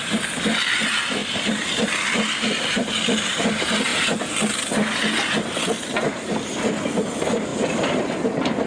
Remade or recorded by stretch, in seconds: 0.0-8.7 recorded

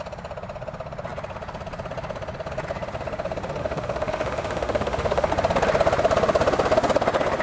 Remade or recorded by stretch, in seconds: 0.0-3.6 recorded; 3.6-5.3 remade; 5.3-7.4 recorded

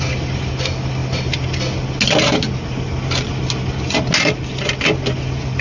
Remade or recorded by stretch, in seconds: 0.0-5.6 recorded

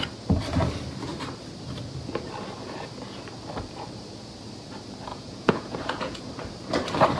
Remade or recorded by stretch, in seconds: 0.0-5.1 recorded; 5.1-6.2 remade; 6.2-7.2 recorded

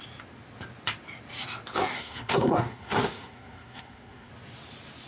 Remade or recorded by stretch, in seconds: 0.0-1.9 recorded; 1.9-4.3 remade; 4.3-5.1 recorded

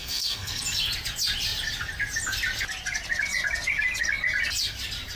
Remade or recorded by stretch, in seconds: 0.0-0.6 remade; 0.6-5.2 recorded

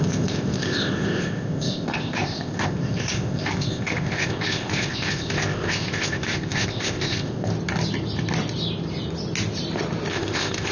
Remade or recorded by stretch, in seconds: 0.0-7.5 remade; 7.5-10.1 recorded; 10.1-10.7 remade